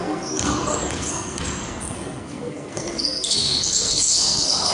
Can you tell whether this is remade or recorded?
remade